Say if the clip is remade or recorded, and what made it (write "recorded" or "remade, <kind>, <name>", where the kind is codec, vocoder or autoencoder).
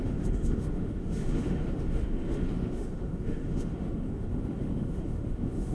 remade, autoencoder, DAC-VAE